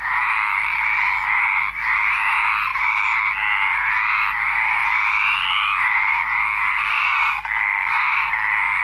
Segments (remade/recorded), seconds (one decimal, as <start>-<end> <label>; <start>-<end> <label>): 0.0-6.7 recorded; 6.7-8.3 remade; 8.3-8.8 recorded